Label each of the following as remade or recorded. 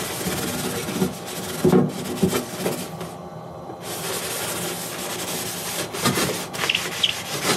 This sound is recorded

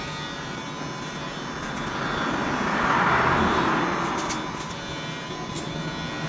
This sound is recorded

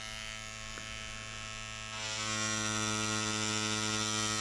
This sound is recorded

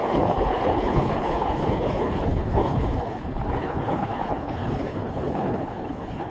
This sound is remade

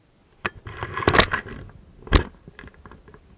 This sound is recorded